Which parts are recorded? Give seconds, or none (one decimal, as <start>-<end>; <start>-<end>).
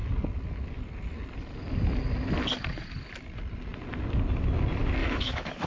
0.0-5.0